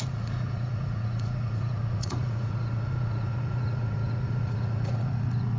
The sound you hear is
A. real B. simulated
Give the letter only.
B